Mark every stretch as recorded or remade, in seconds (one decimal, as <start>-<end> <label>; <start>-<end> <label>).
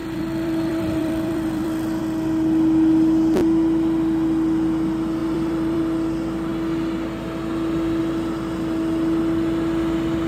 0.0-2.0 remade; 2.0-5.2 recorded; 5.2-5.8 remade; 5.8-10.3 recorded